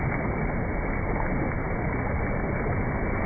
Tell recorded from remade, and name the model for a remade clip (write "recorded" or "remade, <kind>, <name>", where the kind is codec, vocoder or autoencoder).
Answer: recorded